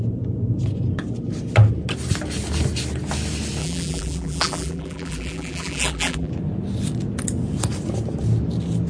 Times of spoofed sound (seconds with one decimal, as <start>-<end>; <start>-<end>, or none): 3.6-6.3